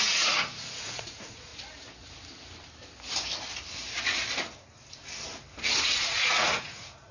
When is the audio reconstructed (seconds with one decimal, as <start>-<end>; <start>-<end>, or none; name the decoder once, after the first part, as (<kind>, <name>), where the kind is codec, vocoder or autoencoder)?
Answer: 0.0-1.5 (vocoder, Vocos); 5.8-7.1